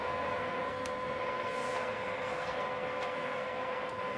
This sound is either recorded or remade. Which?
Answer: remade